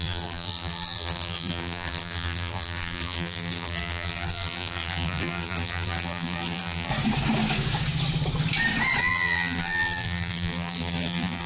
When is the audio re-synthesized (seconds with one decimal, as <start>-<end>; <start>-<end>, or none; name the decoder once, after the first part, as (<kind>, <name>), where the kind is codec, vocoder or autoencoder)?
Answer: 0.0-6.9 (vocoder, BigVGAN v2); 9.0-11.5